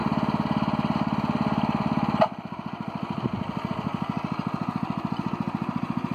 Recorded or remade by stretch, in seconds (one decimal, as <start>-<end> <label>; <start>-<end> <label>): 0.0-6.1 recorded